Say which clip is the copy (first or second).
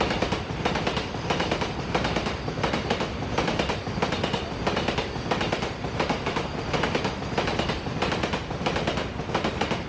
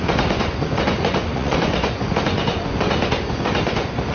second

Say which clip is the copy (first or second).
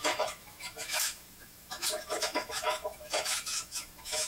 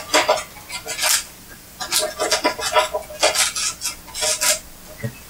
first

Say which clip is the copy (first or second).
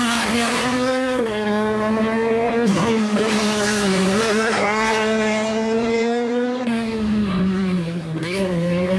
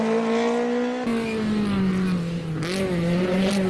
first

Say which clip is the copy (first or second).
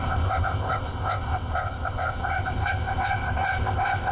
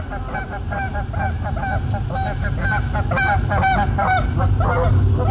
first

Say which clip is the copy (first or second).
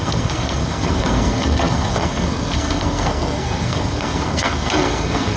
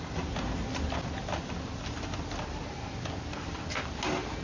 first